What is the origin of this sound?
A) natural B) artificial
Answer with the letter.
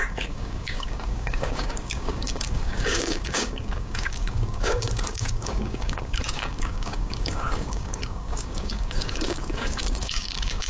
B